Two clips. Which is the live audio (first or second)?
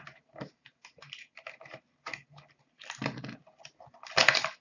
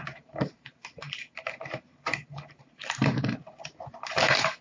first